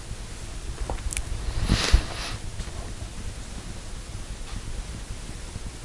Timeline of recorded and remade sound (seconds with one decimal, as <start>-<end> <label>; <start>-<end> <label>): 0.0-5.8 recorded